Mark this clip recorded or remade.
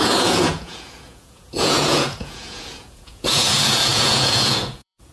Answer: remade